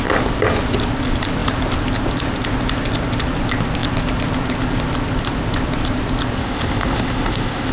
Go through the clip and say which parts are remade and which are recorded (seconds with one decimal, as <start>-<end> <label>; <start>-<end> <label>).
0.0-6.4 recorded; 6.4-7.7 remade